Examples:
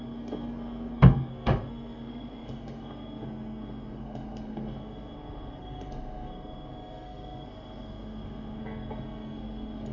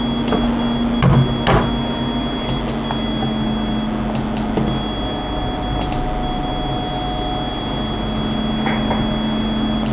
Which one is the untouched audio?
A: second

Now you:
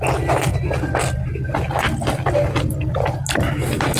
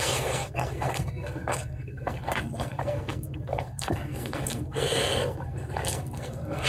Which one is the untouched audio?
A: first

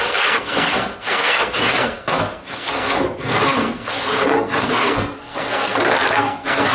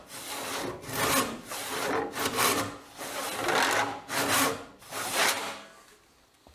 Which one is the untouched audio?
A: second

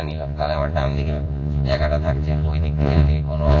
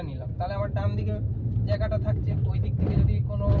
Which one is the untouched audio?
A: second